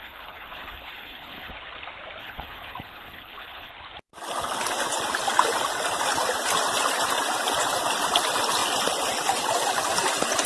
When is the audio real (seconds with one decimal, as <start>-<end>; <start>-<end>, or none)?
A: 1.5-2.2; 3.7-10.5